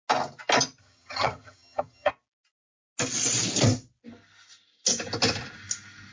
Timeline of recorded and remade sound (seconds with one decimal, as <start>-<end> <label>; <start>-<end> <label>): 0.0-0.8 recorded; 0.8-2.1 remade; 2.1-6.1 recorded